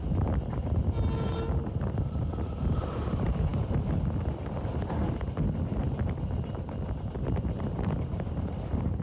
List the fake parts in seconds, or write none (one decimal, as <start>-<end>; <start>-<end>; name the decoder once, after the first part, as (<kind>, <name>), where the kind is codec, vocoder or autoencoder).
none